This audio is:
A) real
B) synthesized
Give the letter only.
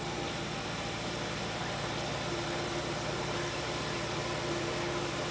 B